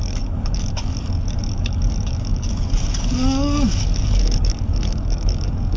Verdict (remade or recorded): remade